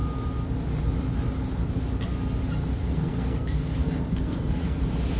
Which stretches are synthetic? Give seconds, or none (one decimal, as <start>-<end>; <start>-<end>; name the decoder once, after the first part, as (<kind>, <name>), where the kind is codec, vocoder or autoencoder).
2.8-4.8 (codec, SNAC)